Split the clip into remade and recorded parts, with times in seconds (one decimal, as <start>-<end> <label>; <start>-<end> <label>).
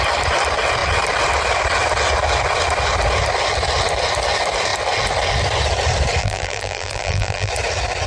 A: 0.0-6.2 recorded; 6.2-7.5 remade; 7.5-8.1 recorded